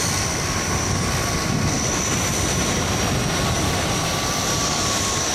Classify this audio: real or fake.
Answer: real